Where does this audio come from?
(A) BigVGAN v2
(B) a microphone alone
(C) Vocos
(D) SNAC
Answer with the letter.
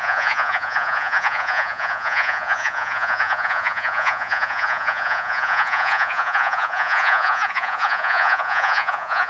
C